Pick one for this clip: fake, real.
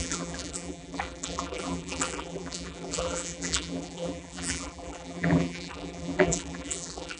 fake